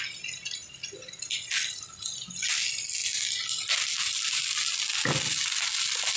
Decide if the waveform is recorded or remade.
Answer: recorded